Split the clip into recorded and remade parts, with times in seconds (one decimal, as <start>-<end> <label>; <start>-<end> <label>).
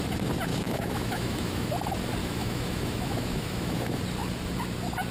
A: 0.0-0.5 recorded; 0.5-1.7 remade; 1.7-2.2 recorded; 2.2-4.0 remade; 4.0-5.1 recorded